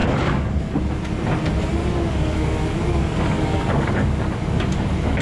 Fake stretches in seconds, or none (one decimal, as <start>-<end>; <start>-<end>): 0.0-0.8; 1.8-5.2